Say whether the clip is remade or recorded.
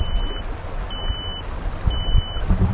recorded